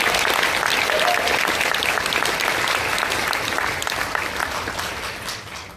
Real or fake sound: real